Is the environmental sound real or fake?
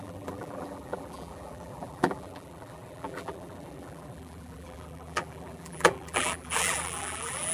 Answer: fake